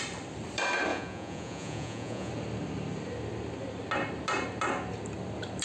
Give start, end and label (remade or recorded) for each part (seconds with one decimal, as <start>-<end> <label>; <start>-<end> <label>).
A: 0.0-0.9 recorded; 0.9-2.3 remade; 2.3-5.6 recorded